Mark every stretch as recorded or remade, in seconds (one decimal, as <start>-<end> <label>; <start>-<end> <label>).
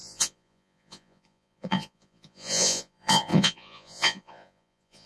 0.0-5.1 remade